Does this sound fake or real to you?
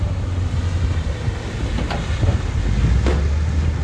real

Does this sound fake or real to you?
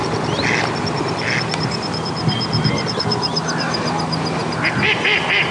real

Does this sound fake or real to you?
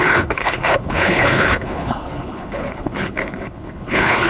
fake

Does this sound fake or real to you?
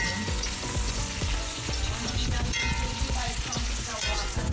fake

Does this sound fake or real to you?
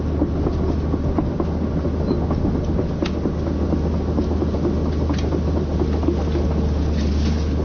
real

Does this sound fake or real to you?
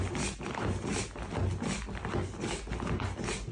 real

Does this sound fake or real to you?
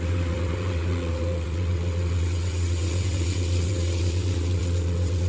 fake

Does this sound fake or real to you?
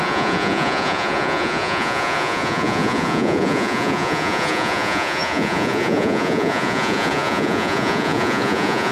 fake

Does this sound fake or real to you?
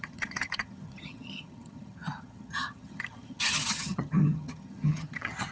fake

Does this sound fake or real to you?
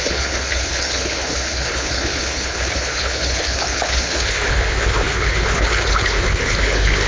fake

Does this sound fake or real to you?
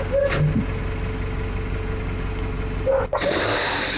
real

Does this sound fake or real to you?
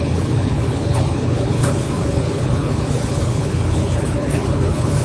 fake